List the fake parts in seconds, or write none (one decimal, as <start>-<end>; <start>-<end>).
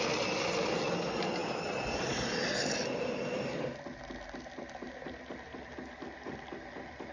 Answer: none